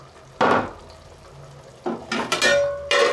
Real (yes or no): yes